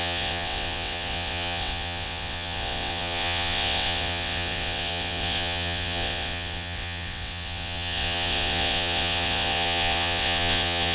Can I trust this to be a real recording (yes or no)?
no